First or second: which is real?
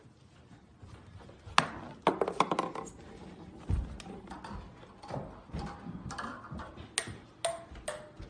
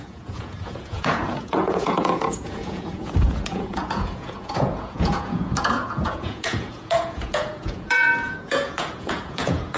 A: first